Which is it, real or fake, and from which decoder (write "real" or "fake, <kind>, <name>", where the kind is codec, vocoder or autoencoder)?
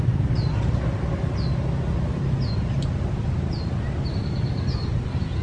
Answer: real